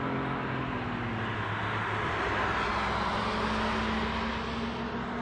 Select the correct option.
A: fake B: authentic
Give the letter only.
B